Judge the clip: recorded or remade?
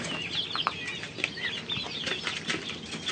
recorded